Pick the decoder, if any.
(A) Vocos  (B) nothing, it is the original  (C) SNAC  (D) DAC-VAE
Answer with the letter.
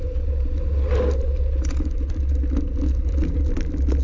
B